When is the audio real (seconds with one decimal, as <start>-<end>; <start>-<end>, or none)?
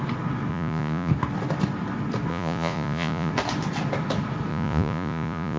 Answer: 0.0-0.5; 1.1-2.3; 3.3-4.5